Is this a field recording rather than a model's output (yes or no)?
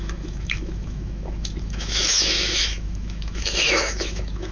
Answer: no